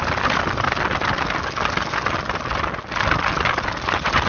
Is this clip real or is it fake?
real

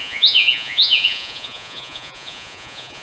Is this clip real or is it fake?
fake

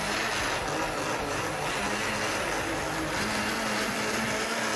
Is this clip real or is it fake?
real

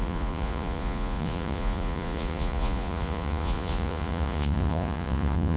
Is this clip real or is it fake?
fake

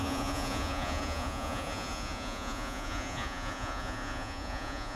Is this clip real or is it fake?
fake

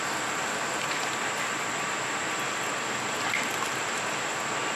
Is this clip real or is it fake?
real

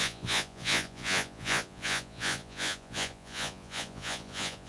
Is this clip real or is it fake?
fake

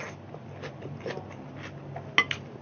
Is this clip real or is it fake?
real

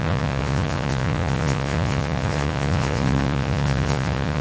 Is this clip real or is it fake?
fake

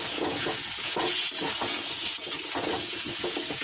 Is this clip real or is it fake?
fake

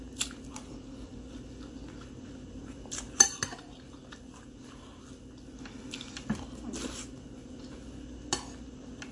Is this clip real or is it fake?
real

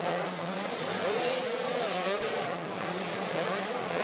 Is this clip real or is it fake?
fake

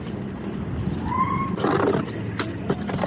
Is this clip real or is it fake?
real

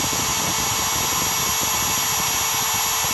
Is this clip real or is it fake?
real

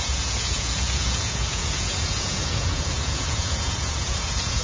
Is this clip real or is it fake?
fake